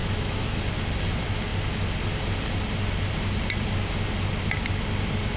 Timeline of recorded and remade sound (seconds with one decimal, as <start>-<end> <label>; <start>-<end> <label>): 0.0-0.6 remade; 0.6-5.4 recorded